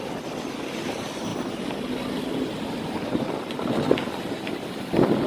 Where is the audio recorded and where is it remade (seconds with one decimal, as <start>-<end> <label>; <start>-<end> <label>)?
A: 0.0-5.3 recorded